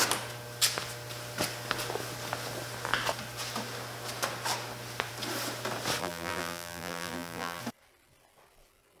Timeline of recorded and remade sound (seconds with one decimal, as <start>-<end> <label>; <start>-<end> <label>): 0.0-6.0 recorded; 6.0-7.6 remade; 7.6-9.0 recorded